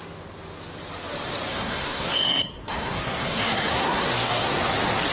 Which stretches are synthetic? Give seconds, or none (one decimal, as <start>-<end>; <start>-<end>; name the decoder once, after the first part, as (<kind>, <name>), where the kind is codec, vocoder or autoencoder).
1.5-4.6 (codec, SNAC)